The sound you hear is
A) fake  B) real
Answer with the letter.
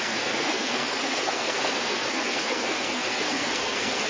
A